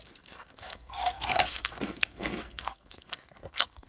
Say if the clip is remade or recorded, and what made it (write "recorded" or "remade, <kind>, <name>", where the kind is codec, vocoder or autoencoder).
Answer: remade, codec, SNAC